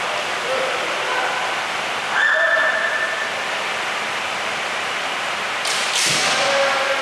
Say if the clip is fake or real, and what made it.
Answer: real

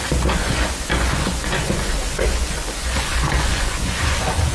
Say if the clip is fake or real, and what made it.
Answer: fake, vocoder, Vocos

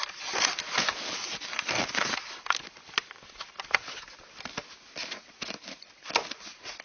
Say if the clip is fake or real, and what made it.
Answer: real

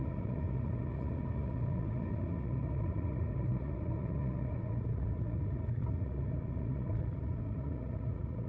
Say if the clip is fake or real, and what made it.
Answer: fake, vocoder, Vocos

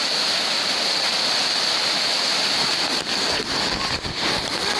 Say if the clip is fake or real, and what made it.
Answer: real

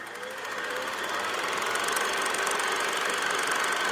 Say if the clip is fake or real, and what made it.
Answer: real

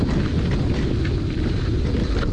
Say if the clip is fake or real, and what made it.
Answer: real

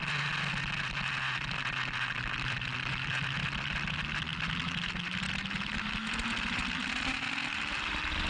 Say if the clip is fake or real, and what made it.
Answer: real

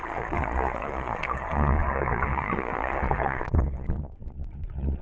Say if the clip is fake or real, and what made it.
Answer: fake, vocoder, Vocos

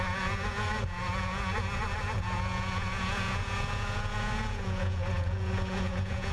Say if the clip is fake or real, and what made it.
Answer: fake, vocoder, Vocos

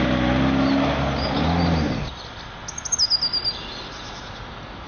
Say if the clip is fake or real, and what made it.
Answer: real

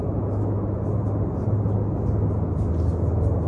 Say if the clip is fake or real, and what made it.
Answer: real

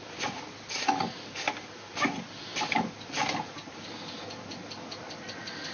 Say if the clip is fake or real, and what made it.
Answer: real